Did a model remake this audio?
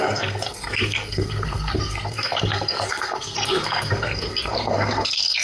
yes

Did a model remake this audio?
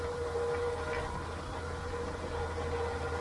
no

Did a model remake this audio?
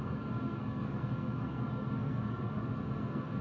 yes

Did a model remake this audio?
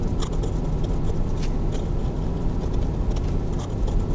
no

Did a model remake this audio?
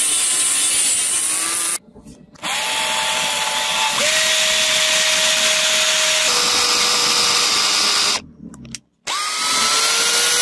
no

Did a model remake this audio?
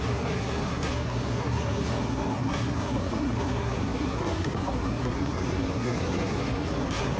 yes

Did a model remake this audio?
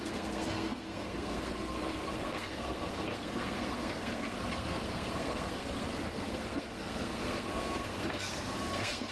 yes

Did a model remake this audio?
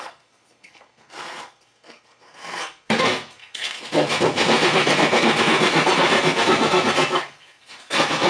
yes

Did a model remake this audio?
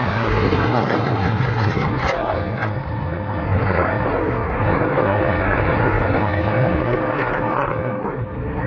yes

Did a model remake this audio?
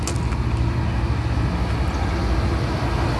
no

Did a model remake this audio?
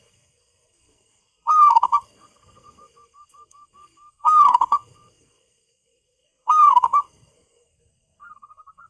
yes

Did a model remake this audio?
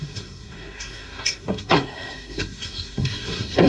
yes